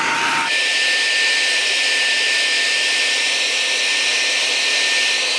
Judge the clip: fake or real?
real